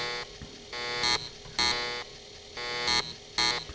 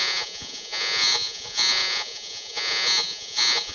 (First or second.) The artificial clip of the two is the second